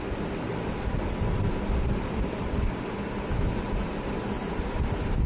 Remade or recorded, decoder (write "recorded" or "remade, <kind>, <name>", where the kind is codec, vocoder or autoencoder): recorded